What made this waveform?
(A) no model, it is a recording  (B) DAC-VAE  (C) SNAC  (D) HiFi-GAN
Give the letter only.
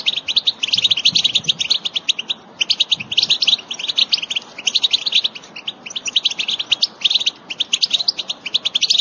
A